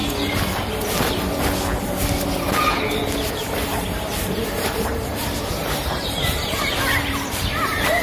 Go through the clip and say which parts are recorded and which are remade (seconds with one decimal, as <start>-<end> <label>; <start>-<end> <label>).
0.0-3.3 recorded; 3.3-8.0 remade